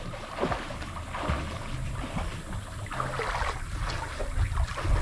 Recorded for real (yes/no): yes